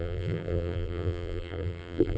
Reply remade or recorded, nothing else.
remade